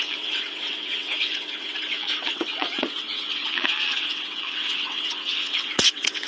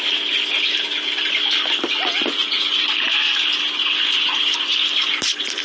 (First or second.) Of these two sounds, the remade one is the first